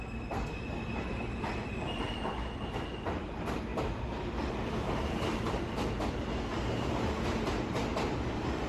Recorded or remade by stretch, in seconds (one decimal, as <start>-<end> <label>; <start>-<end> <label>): 0.0-8.7 recorded